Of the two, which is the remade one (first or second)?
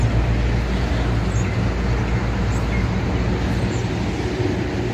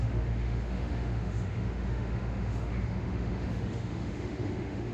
second